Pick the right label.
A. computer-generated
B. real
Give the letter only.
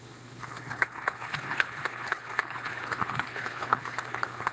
A